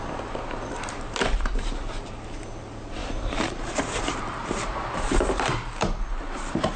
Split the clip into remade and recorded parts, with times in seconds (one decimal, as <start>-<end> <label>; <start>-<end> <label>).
0.0-6.8 remade